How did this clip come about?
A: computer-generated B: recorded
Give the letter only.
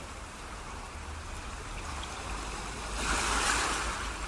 A